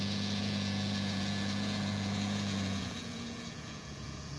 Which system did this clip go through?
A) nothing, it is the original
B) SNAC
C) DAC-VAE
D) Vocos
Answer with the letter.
D